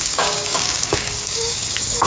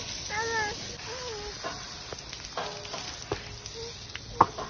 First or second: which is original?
second